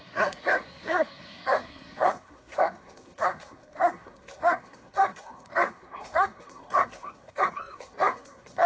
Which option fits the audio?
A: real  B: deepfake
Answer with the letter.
B